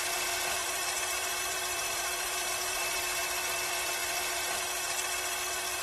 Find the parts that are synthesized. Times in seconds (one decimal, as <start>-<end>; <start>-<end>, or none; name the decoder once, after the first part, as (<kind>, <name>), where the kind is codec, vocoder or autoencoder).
0.6-3.0 (vocoder, BigVGAN v2)